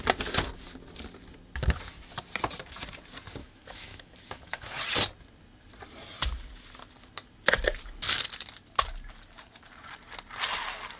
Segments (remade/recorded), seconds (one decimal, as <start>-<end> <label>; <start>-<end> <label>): 0.0-3.4 recorded; 3.4-4.8 remade; 4.8-11.0 recorded